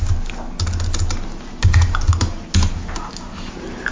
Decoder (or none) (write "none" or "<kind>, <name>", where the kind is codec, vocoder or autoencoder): none